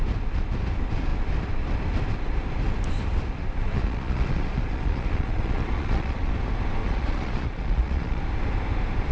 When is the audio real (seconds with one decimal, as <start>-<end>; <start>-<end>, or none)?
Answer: 0.0-3.6; 6.3-6.8; 8.2-9.1